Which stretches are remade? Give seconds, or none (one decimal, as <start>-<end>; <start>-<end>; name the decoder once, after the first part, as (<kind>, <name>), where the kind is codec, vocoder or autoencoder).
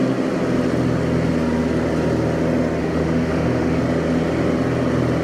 2.8-3.8 (autoencoder, DAC-VAE)